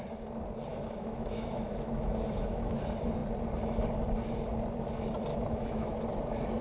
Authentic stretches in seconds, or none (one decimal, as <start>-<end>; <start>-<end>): 0.0-0.7; 2.8-5.3; 5.9-6.6